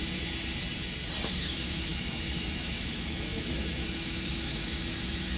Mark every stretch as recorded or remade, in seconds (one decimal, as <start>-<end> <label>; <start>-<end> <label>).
0.0-1.4 recorded; 1.4-5.4 remade